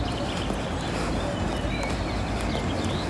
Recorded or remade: recorded